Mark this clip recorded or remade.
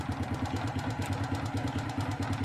recorded